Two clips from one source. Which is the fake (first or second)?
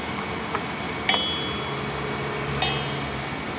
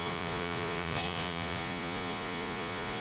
second